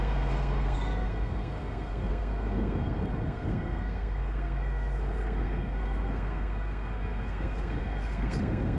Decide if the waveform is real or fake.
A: fake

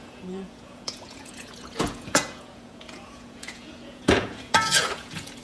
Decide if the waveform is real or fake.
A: fake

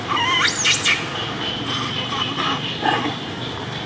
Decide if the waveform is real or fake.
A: real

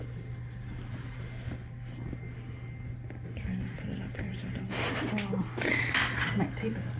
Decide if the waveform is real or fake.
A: real